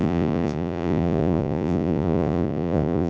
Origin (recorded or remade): remade